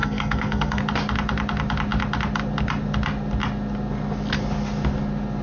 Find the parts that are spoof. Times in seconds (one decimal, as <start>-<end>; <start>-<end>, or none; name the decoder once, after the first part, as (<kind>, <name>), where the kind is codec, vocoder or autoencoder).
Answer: 0.0-0.8 (codec, SNAC)